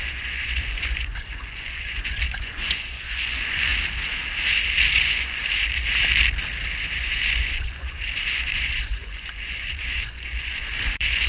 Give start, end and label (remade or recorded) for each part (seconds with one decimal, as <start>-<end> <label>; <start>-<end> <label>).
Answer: 0.0-3.7 remade; 3.7-4.9 recorded; 4.9-5.4 remade; 5.4-7.0 recorded; 7.0-11.3 remade